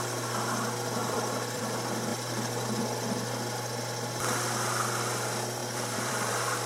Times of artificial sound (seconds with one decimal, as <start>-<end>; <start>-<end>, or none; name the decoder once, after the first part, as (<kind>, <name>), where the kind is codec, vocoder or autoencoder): 1.0-1.6 (vocoder, BigVGAN v2); 2.1-2.8; 5.6-6.3